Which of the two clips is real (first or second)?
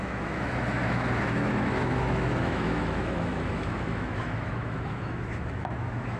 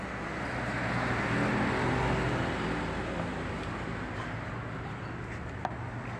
second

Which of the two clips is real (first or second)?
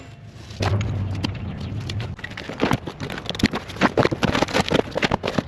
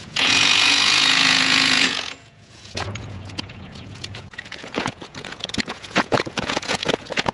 first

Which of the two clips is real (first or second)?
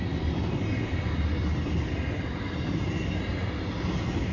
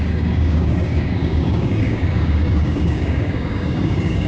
first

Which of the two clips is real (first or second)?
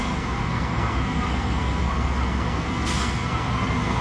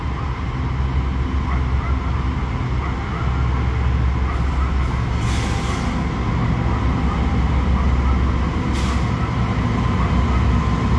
second